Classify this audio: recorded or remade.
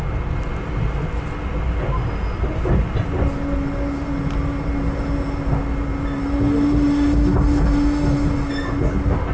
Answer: recorded